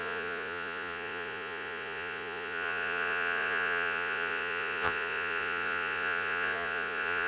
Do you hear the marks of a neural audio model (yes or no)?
yes